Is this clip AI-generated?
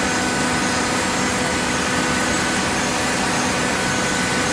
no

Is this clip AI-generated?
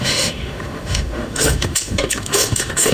yes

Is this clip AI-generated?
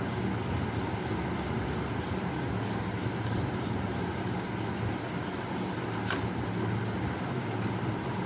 no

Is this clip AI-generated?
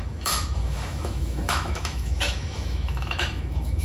yes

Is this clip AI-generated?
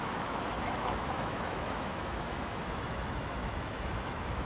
yes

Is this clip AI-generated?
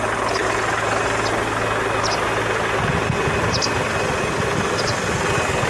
no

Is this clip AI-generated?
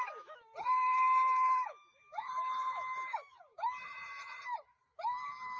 yes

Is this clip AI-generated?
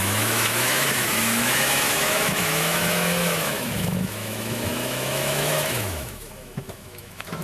yes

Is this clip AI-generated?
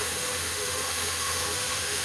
yes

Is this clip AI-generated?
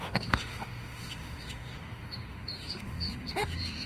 yes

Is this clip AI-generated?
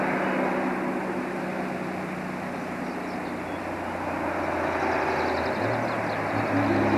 no